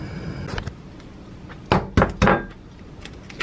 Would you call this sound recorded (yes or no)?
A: yes